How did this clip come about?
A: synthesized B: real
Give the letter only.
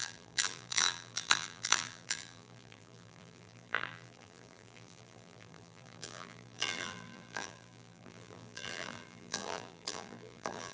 A